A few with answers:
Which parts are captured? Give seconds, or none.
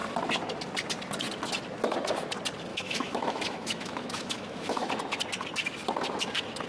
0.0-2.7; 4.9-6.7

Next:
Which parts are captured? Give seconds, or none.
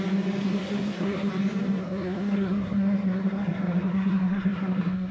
0.0-0.4; 1.3-1.8